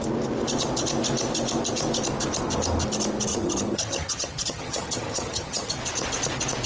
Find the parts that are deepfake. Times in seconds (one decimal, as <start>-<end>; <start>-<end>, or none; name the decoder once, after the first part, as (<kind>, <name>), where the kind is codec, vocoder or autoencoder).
3.3-5.7 (vocoder, HiFi-GAN)